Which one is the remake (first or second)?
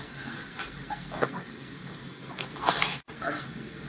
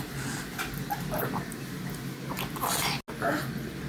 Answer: first